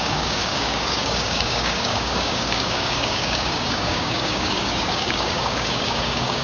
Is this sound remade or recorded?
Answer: remade